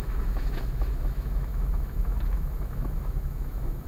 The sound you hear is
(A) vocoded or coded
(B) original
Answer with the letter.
A